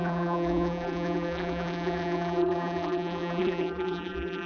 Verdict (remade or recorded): remade